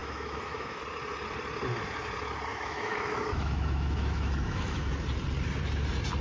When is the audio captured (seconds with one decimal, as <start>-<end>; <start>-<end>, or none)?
0.8-2.5; 4.9-6.2